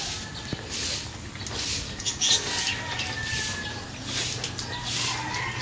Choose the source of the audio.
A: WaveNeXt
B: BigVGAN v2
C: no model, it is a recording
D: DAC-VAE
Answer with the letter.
C